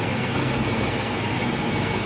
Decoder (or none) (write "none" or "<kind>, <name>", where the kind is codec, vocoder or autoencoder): codec, SNAC